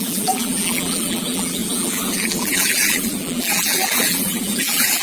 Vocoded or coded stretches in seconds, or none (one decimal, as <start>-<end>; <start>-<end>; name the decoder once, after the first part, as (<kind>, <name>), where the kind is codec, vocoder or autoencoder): 0.0-5.0 (vocoder, BigVGAN v2)